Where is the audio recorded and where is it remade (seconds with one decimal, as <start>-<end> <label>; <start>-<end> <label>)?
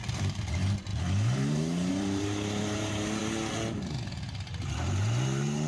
0.0-3.2 remade; 3.2-4.4 recorded; 4.4-5.7 remade